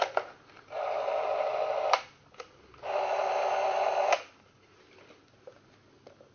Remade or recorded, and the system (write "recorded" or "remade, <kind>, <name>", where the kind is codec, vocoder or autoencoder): recorded